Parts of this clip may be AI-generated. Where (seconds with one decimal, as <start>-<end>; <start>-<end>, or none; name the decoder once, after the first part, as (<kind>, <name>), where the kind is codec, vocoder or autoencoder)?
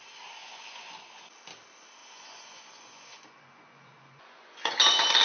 0.4-0.9 (vocoder, Vocos); 2.0-4.7